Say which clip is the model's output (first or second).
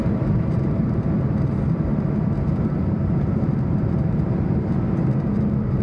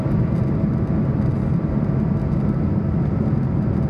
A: first